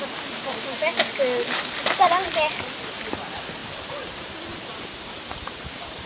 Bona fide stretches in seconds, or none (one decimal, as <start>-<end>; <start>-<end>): 0.0-3.6